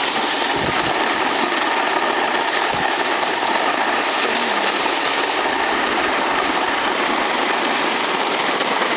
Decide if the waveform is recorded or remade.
recorded